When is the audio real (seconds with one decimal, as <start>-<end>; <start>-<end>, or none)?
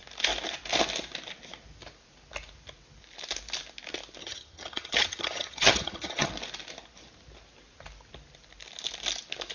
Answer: 0.0-4.2; 6.3-9.5